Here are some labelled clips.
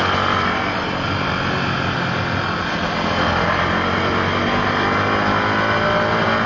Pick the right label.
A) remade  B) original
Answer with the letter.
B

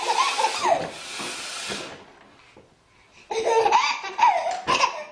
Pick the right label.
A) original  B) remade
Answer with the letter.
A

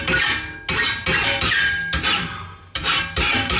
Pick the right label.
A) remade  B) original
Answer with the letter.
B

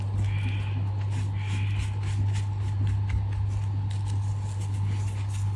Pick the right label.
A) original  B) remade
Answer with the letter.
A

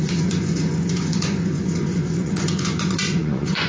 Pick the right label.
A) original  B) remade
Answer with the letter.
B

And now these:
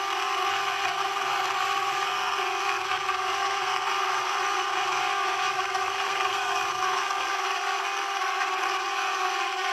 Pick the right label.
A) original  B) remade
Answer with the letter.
B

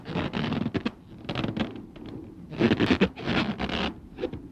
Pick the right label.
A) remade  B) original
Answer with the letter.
B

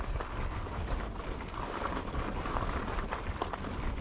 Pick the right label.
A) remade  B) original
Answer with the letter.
B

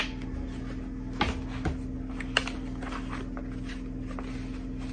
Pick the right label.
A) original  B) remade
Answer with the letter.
A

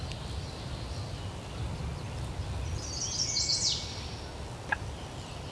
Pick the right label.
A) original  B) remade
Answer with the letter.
A